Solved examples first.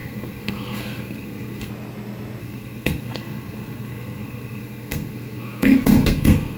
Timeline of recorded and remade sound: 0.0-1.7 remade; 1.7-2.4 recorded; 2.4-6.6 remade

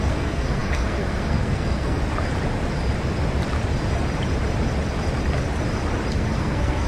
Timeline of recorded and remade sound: 0.0-2.0 remade; 2.0-6.1 recorded; 6.1-6.9 remade